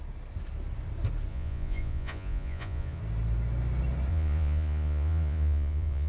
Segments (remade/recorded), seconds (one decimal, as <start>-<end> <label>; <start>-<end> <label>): 0.0-1.3 recorded; 1.3-3.0 remade; 3.0-4.1 recorded; 4.1-6.1 remade